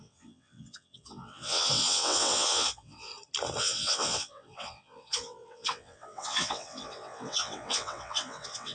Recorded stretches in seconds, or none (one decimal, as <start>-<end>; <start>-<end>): 3.1-3.6